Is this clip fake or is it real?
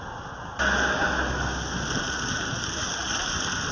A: real